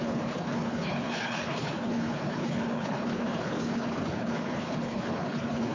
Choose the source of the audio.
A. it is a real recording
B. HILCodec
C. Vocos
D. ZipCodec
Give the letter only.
B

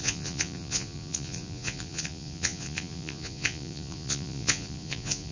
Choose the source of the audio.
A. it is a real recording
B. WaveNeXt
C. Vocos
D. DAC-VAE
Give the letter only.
C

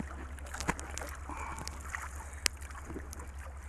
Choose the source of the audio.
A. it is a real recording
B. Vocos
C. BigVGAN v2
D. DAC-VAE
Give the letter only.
A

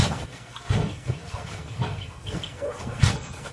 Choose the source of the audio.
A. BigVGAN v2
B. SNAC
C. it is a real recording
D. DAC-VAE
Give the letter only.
B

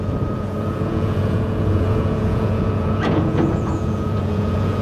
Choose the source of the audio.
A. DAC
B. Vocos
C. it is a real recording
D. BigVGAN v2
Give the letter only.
B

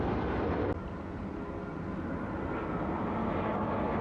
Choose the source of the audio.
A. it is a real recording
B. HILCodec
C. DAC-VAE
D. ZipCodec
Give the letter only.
A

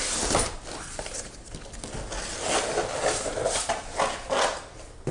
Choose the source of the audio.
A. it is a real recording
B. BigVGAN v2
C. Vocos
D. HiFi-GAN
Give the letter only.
A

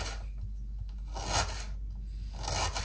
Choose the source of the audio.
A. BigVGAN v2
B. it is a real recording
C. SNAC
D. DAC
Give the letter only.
B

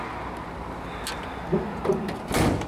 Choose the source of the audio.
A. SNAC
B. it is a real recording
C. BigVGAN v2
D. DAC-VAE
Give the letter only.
B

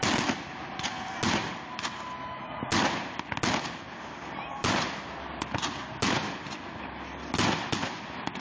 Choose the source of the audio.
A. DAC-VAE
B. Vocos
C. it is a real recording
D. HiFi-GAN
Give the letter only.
C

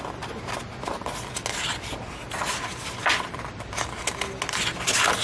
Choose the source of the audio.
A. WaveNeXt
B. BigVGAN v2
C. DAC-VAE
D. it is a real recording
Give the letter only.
D